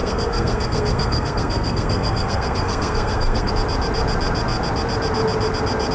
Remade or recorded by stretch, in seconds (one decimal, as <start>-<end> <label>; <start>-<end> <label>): 0.0-3.5 remade; 3.5-5.9 recorded